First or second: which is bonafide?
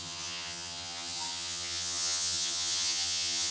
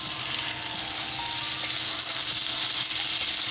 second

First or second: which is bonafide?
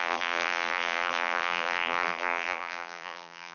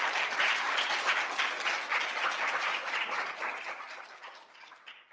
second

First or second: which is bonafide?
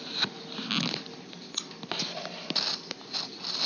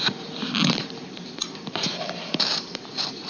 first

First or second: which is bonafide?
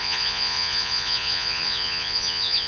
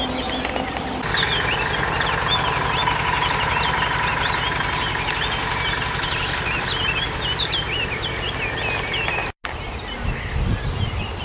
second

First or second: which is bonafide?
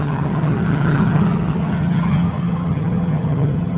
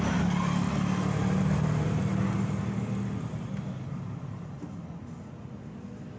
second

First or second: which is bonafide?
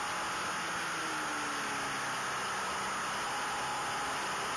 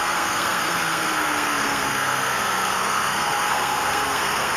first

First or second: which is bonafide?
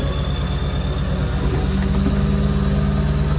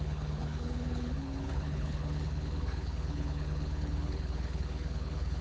first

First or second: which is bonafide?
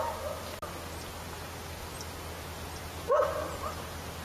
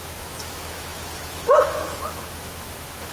first